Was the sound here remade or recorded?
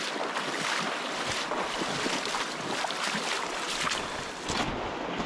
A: recorded